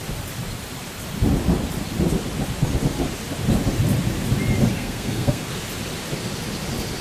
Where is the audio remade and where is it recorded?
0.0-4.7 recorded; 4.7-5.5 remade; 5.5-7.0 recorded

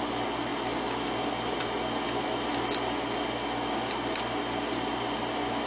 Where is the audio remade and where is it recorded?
0.0-5.7 recorded

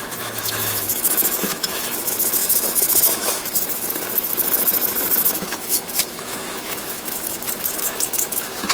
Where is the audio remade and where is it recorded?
0.0-8.7 remade

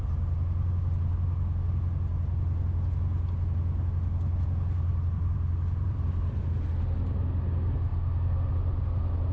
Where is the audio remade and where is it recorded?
0.0-4.9 recorded; 4.9-6.7 remade; 6.7-9.3 recorded

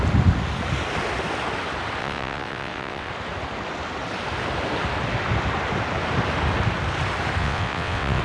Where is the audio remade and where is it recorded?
0.0-2.0 recorded; 2.0-3.1 remade; 3.1-7.4 recorded; 7.4-8.2 remade

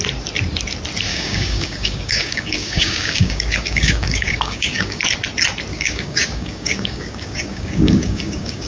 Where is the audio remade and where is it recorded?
0.0-1.1 recorded; 1.1-5.0 remade; 5.0-5.7 recorded; 5.7-8.7 remade

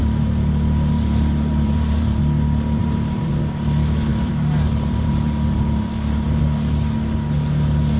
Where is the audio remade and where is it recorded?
0.0-2.2 remade; 2.2-2.8 recorded; 2.8-3.3 remade; 3.3-4.1 recorded; 4.1-6.4 remade; 6.4-8.0 recorded

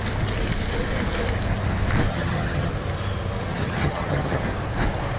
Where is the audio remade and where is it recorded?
0.0-2.1 recorded; 2.1-2.7 remade; 2.7-3.5 recorded; 3.5-4.4 remade; 4.4-5.2 recorded